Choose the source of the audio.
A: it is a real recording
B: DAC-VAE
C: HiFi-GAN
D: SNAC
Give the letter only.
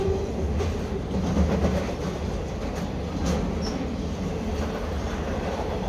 A